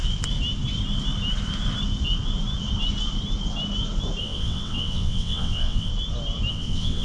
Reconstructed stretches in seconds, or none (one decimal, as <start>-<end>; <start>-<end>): 4.2-5.9; 6.5-7.0